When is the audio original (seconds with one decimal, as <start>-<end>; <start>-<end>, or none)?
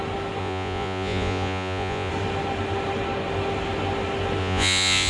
0.0-0.4; 2.1-4.4